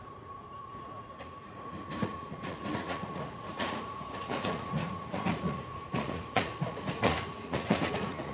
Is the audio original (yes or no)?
no